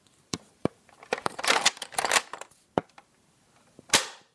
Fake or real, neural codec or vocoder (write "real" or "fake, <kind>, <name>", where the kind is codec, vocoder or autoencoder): fake, vocoder, BigVGAN v2